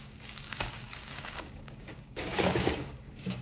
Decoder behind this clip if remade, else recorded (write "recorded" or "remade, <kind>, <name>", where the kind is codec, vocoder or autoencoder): remade, codec, DAC